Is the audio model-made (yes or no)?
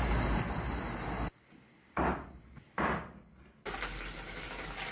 no